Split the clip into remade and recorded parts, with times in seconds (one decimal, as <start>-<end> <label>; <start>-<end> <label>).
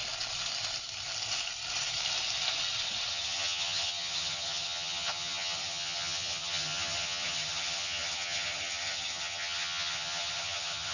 0.0-3.1 recorded; 3.1-10.9 remade